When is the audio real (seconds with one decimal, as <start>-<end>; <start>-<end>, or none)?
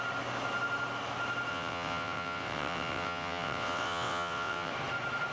0.0-1.5; 4.7-5.3